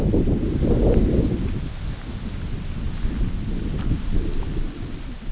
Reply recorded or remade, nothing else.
recorded